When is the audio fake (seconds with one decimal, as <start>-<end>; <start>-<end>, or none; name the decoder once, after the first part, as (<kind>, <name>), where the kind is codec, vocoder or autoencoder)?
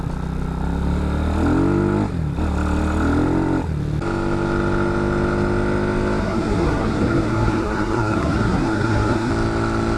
6.2-9.3 (codec, SNAC)